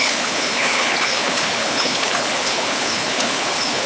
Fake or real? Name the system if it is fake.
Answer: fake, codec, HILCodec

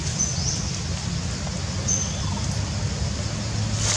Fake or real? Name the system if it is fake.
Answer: real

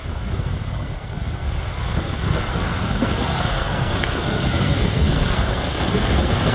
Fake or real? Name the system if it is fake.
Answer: fake, codec, SNAC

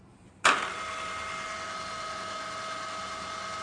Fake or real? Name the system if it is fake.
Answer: real